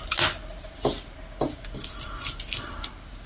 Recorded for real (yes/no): yes